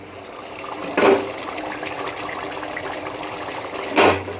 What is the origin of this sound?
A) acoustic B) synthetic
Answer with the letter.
A